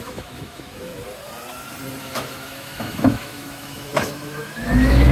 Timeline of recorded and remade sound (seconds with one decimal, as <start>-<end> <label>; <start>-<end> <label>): 0.0-0.9 remade; 0.9-2.0 recorded; 2.0-5.1 remade